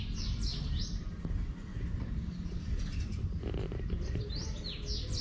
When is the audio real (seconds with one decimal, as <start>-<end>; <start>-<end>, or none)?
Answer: 0.0-0.5; 1.0-1.7; 4.6-5.2